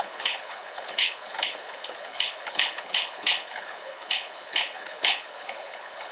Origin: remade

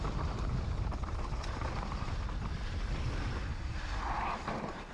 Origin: recorded